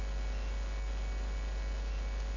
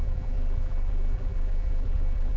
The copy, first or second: second